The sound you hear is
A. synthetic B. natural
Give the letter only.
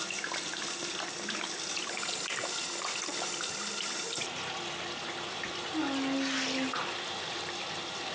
B